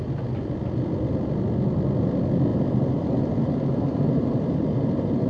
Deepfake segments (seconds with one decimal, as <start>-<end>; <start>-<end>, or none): 2.5-5.3